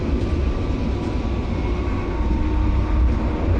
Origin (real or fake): real